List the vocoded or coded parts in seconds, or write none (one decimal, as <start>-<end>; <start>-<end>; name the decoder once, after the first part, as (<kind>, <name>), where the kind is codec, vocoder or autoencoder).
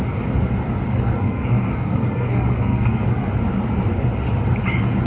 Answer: 0.9-3.3 (codec, SNAC)